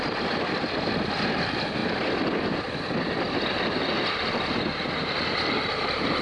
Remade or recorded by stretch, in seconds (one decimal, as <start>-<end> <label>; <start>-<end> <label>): 0.0-1.8 remade; 1.8-5.5 recorded; 5.5-6.2 remade